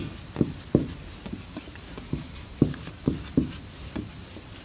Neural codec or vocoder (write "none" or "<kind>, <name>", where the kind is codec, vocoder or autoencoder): vocoder, BigVGAN v2